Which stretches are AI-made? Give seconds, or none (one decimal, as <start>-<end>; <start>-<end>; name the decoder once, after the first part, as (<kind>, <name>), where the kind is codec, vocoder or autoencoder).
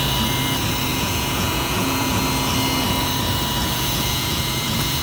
0.9-2.2 (vocoder, Vocos); 3.6-5.0